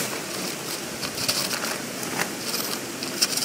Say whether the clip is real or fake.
fake